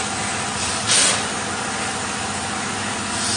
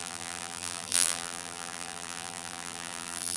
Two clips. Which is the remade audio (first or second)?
second